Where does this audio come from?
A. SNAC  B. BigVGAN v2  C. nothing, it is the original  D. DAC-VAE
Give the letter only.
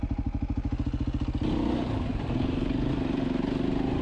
C